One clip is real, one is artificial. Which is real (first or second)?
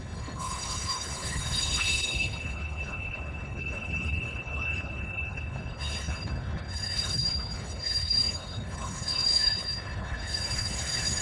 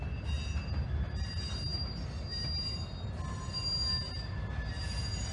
second